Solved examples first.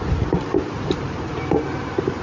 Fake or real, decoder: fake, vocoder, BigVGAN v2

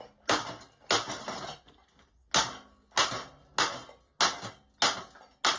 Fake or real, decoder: real